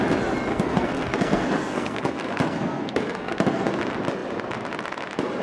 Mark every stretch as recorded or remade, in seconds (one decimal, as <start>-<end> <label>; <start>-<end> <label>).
0.0-0.5 recorded; 0.5-3.7 remade; 3.7-5.4 recorded